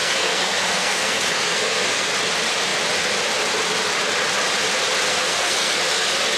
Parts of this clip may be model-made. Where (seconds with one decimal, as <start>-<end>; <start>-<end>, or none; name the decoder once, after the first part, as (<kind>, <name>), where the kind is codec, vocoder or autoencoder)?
0.0-2.1 (codec, SNAC); 5.1-5.8